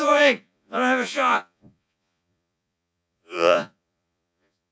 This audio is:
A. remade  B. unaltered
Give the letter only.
A